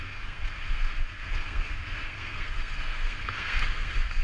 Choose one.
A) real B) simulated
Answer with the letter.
B